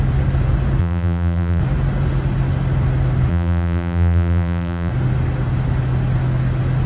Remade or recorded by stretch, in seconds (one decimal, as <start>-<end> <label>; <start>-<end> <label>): 0.0-0.8 recorded; 0.8-1.6 remade; 1.6-3.3 recorded; 3.3-4.9 remade; 4.9-6.9 recorded